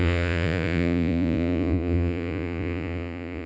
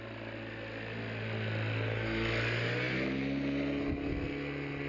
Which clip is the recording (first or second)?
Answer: second